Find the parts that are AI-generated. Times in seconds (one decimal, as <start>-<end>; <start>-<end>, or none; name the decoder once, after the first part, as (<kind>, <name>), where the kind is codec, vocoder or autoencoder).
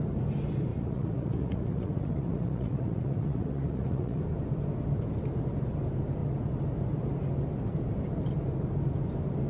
0.7-4.2 (vocoder, Vocos)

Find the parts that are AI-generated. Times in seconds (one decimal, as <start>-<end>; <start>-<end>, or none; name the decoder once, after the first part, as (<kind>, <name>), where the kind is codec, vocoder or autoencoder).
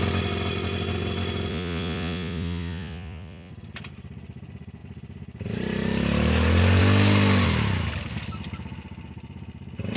1.5-3.5 (vocoder, Vocos)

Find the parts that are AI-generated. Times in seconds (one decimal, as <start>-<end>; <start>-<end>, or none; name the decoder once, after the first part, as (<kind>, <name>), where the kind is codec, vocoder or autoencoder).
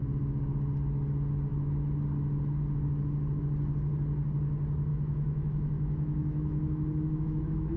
4.9-7.8 (autoencoder, DAC-VAE)